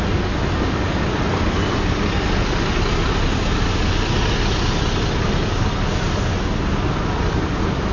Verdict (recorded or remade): recorded